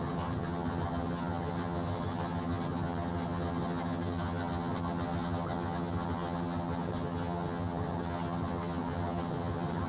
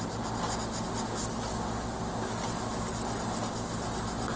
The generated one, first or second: first